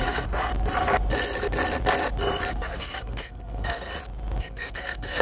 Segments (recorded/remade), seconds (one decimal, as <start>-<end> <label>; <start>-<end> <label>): 0.0-0.5 remade; 0.5-2.5 recorded; 2.5-3.9 remade; 3.9-4.4 recorded; 4.4-5.2 remade